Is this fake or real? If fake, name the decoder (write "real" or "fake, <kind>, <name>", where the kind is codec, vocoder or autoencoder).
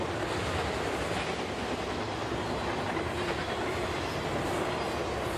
real